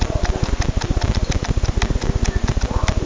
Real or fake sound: real